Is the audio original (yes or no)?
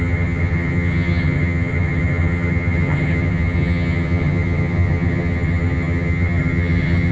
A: no